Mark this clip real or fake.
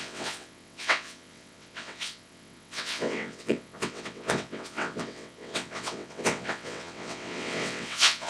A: fake